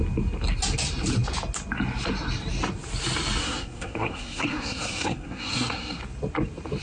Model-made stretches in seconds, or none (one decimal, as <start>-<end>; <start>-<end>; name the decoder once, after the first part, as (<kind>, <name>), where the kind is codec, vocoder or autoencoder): 3.4-6.0 (codec, SNAC)